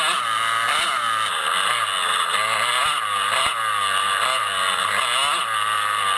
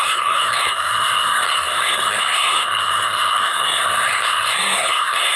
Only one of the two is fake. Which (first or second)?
second